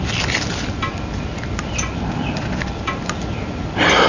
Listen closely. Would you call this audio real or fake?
real